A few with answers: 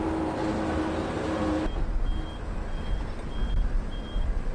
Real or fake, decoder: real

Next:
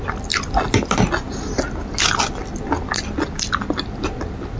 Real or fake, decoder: real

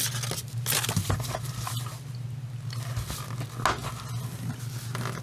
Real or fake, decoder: real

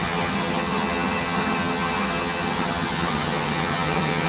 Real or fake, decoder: fake, vocoder, HiFi-GAN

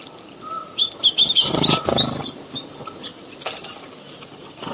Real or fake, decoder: real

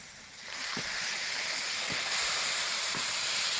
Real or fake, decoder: fake, vocoder, BigVGAN v2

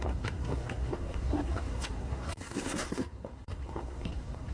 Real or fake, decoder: fake, codec, SNAC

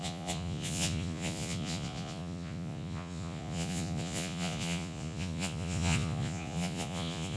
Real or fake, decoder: fake, vocoder, Vocos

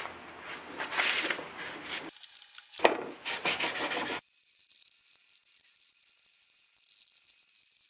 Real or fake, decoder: real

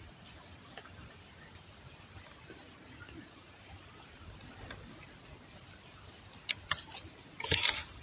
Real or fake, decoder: real